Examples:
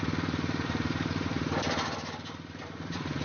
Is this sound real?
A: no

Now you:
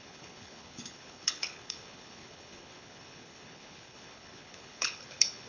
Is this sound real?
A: no